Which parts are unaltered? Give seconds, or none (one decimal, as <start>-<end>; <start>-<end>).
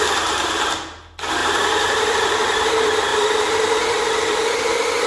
0.0-1.4; 2.7-3.1; 3.8-5.1